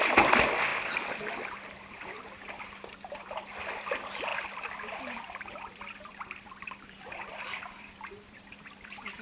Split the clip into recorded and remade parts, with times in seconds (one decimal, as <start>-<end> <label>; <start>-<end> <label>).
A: 0.0-0.7 remade; 0.7-2.6 recorded; 2.6-9.2 remade